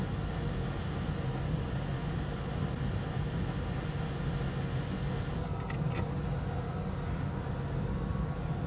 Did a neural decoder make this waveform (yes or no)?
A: no